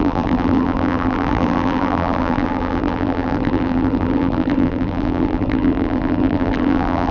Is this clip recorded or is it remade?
remade